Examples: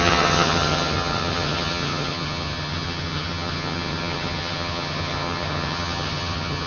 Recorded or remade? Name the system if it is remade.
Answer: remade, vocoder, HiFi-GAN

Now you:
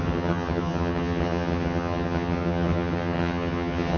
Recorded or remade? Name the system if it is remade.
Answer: remade, vocoder, HiFi-GAN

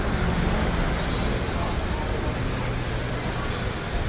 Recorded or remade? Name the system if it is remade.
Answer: recorded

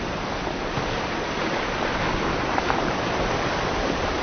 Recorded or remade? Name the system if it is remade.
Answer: recorded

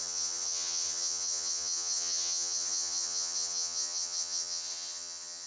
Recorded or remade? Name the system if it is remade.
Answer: remade, vocoder, HiFi-GAN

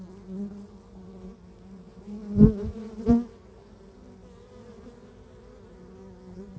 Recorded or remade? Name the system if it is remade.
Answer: recorded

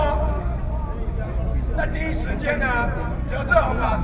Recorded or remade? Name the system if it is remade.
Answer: recorded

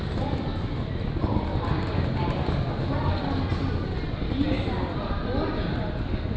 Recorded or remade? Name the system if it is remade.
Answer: recorded